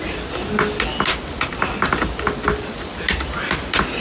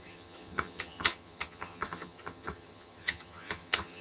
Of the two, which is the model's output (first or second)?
second